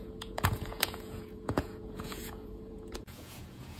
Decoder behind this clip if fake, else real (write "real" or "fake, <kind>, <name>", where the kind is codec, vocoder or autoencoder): fake, vocoder, Vocos